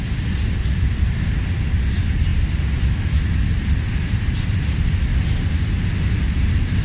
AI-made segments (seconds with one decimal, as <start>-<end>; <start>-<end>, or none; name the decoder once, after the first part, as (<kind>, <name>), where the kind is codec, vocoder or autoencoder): none